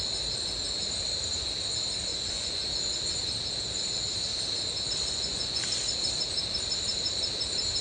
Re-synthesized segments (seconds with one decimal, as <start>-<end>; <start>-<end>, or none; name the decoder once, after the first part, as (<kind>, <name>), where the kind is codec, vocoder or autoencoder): 2.1-2.7 (vocoder, Vocos); 5.0-5.6